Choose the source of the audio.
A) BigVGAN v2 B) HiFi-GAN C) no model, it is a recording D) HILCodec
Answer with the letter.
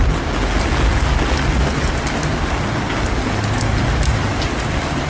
C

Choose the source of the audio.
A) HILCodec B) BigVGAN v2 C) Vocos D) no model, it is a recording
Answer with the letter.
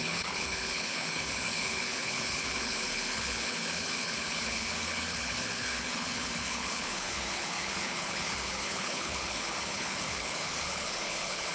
A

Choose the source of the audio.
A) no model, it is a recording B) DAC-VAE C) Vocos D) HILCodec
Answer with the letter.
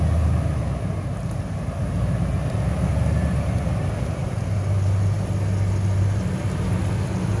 A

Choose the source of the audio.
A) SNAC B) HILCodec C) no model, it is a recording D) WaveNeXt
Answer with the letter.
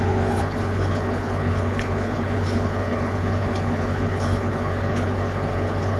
B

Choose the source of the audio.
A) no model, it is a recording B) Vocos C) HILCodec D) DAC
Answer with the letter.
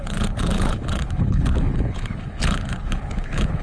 C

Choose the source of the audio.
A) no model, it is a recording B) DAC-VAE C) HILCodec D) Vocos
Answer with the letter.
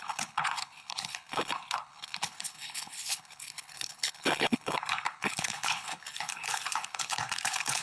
C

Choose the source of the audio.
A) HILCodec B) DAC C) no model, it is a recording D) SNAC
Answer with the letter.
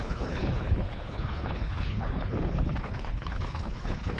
A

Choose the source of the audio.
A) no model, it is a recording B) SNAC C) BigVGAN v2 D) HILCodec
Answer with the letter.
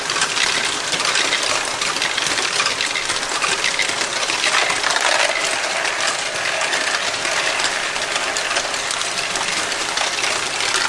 A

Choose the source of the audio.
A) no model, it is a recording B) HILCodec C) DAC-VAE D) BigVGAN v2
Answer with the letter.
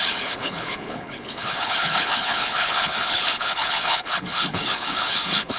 B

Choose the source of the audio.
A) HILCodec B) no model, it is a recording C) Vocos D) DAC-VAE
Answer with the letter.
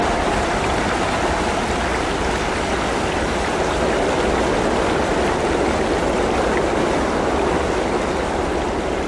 B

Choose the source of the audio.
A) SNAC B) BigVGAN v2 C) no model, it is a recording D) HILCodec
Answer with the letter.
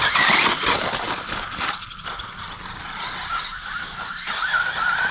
C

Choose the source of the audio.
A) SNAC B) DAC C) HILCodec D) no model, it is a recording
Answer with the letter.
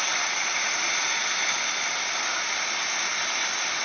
D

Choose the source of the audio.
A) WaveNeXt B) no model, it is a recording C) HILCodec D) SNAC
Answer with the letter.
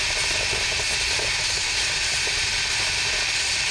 B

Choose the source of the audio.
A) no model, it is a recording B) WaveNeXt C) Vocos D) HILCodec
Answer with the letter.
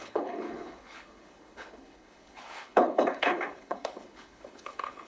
D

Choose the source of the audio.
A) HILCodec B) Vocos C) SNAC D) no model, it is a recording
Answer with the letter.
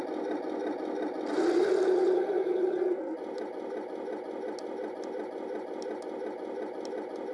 D